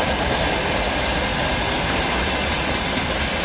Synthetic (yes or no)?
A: no